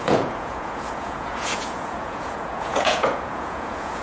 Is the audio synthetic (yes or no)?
yes